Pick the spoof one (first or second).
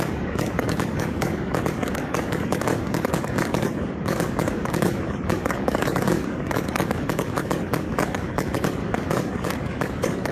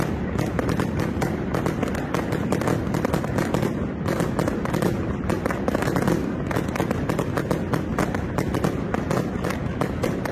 first